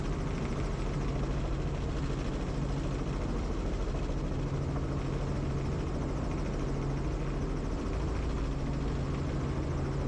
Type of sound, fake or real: real